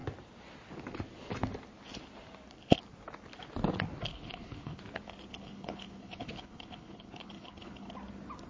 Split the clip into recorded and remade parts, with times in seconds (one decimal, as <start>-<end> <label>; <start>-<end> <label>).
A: 0.0-4.1 recorded; 4.1-4.8 remade; 4.8-5.3 recorded; 5.3-7.9 remade; 7.9-8.5 recorded